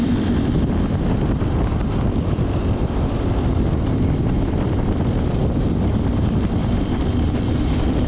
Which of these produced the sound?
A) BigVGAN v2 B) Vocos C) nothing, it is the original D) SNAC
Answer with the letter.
A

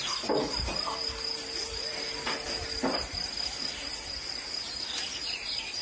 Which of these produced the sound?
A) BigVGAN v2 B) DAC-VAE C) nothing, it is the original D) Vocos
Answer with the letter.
C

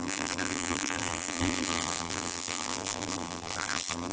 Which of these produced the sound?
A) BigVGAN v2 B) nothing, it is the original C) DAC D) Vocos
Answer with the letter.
A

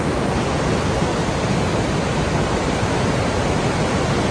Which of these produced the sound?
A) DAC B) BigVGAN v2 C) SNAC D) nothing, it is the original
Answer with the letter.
D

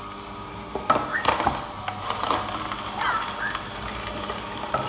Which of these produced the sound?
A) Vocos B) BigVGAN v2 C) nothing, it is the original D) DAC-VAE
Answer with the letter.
C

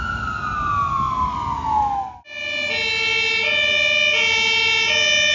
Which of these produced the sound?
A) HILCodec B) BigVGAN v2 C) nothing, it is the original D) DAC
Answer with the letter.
C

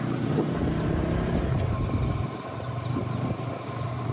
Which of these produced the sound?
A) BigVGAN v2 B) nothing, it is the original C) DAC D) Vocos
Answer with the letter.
B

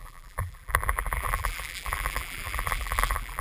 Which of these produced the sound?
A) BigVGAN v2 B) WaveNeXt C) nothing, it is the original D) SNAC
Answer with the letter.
A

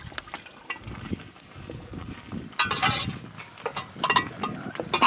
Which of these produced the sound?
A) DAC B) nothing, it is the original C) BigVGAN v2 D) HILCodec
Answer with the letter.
B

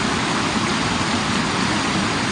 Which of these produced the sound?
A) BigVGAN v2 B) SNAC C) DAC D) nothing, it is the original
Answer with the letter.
D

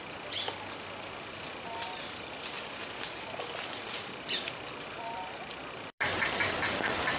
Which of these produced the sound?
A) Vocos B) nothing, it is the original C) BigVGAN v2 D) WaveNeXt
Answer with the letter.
B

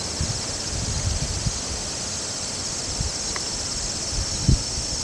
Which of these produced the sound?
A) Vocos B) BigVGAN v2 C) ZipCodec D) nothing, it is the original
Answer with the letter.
D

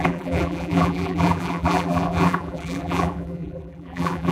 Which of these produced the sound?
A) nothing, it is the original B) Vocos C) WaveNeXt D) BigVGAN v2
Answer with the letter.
D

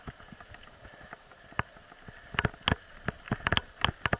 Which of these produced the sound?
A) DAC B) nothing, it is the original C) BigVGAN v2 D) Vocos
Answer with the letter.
B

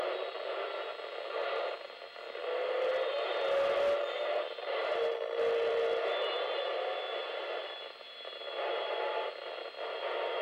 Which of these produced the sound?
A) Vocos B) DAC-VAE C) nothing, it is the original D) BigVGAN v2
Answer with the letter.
C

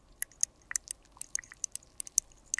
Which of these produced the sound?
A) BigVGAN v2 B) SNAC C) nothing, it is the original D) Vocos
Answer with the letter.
C